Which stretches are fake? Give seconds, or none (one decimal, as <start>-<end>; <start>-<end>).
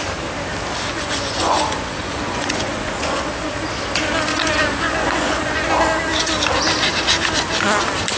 0.9-3.5; 4.3-5.7